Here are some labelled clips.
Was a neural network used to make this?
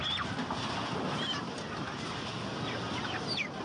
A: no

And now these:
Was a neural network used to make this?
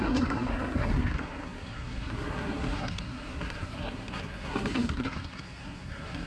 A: yes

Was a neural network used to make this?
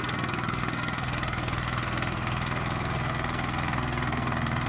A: yes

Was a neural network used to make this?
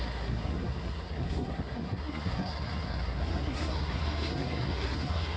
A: yes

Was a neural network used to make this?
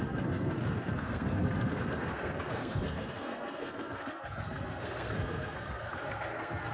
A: yes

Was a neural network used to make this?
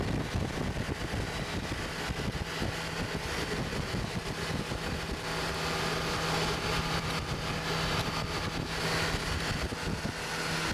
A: no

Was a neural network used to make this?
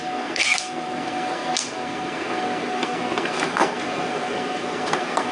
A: yes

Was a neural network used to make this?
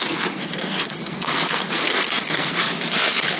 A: yes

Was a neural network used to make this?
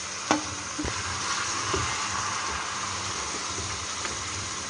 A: no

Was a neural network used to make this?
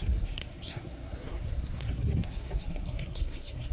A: yes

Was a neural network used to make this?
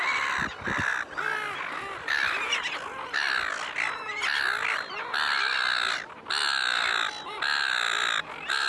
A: no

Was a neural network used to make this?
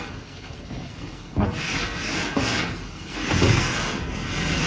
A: yes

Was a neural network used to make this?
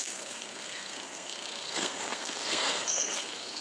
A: yes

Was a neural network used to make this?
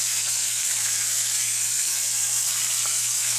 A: yes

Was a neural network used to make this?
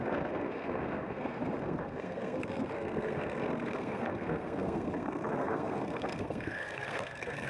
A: yes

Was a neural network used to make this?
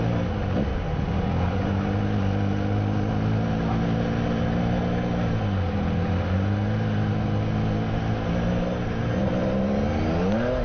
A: no